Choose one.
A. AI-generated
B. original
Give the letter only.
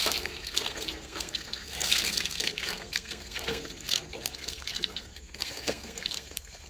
A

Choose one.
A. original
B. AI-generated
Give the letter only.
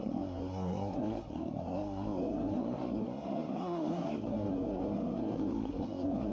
B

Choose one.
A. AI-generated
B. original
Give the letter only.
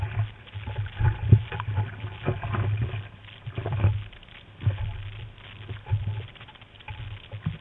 B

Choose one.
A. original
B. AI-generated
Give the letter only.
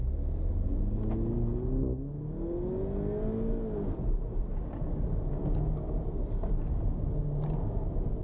A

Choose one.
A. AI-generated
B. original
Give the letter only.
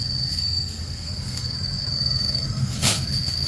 A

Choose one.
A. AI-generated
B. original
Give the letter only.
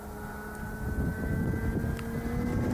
B